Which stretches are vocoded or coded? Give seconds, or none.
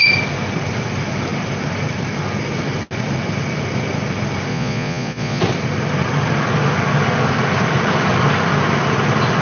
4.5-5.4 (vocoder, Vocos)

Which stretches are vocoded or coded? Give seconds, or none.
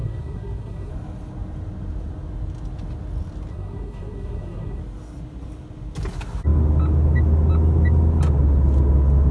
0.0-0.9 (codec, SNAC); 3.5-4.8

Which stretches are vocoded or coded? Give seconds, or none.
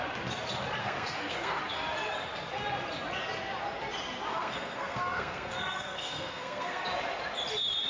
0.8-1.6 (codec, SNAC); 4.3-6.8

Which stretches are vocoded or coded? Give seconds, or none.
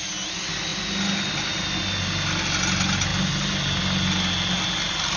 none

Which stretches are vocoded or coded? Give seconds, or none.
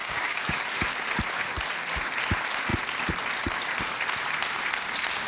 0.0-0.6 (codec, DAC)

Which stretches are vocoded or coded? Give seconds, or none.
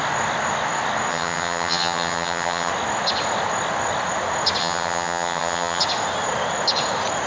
1.1-2.7 (vocoder, HiFi-GAN); 4.6-5.8